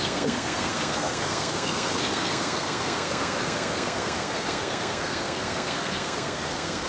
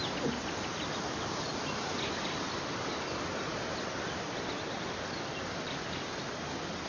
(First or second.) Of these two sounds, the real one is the second